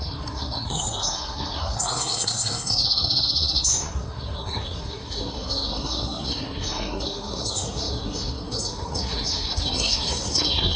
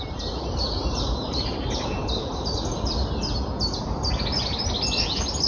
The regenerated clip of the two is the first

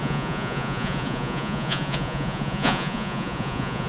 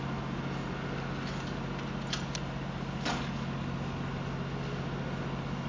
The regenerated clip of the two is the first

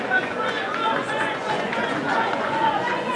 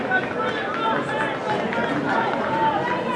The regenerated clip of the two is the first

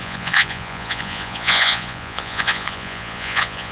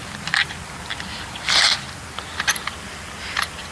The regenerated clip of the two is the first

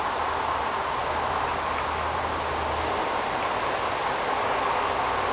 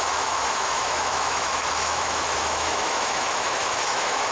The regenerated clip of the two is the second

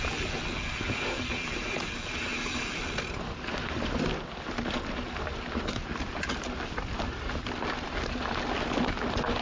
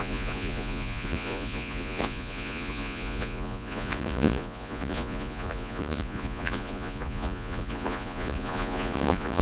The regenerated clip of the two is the second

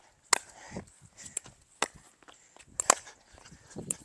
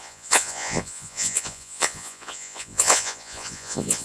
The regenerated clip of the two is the second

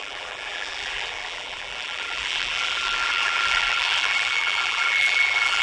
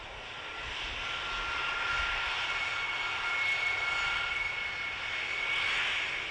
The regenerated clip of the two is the first